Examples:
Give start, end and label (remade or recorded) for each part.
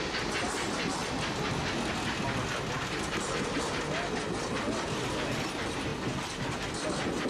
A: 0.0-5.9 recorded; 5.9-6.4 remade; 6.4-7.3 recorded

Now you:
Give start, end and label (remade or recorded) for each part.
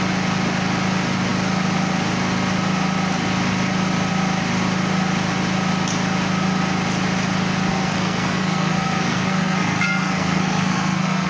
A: 0.0-7.7 recorded; 7.7-11.3 remade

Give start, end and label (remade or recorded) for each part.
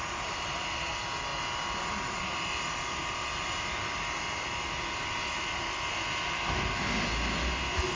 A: 0.0-8.0 recorded